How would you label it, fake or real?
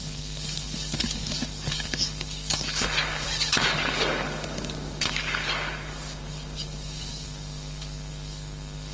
fake